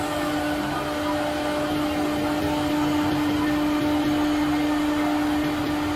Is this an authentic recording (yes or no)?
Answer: yes